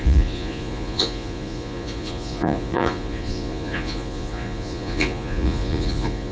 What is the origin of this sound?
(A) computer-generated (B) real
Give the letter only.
A